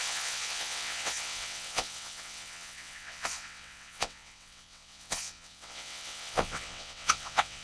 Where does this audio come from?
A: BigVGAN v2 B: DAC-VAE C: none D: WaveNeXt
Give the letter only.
D